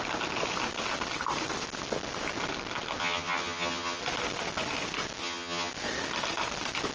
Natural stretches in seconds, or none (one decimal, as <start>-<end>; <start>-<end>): 0.0-3.0; 4.0-5.2; 5.7-6.9